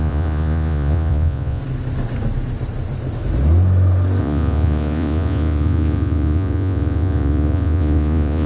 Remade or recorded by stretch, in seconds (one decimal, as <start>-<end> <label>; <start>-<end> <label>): 0.0-1.6 remade; 1.6-4.2 recorded; 4.2-8.5 remade